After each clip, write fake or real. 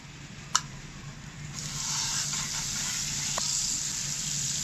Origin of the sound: real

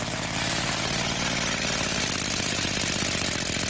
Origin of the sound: real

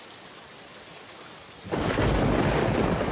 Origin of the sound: real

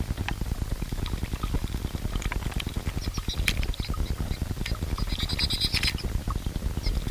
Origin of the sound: real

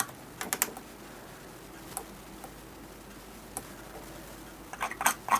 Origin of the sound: real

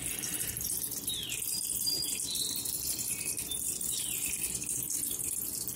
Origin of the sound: fake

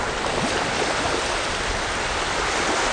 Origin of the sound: real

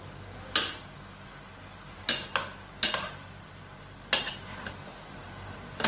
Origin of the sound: real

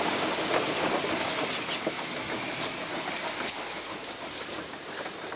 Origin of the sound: real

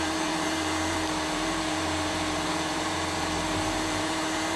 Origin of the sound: fake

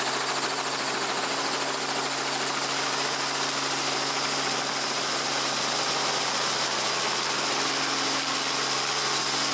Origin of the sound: real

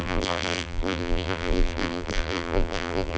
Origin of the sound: fake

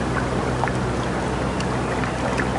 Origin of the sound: real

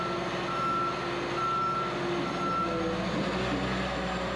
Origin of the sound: real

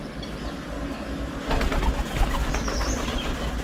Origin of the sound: real